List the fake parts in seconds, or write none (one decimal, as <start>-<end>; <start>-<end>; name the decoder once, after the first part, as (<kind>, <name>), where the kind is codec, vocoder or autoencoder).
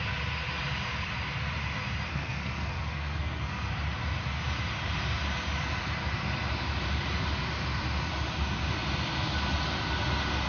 2.1-3.7 (codec, SNAC)